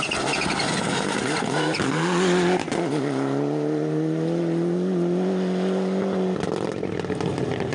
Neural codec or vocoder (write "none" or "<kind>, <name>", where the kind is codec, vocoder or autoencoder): none